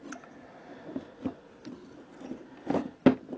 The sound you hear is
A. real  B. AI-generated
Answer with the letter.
A